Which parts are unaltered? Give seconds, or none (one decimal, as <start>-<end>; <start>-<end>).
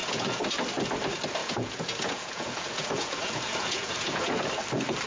0.5-1.4; 4.5-5.1